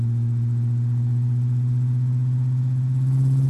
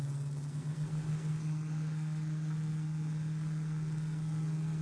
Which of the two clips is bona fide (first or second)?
first